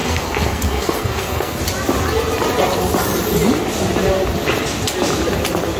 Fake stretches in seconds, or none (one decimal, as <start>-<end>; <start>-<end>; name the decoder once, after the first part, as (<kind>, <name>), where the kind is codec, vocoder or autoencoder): 0.0-1.6 (codec, SNAC)